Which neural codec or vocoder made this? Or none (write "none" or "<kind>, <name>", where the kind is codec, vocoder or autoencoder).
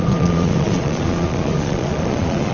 vocoder, Vocos